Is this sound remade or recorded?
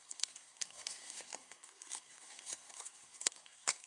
remade